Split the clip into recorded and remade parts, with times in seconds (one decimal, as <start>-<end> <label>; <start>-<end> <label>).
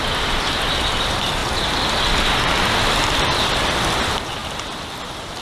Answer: 0.0-4.4 recorded; 4.4-5.0 remade; 5.0-5.4 recorded